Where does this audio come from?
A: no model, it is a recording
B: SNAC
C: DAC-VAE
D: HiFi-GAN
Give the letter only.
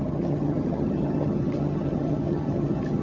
D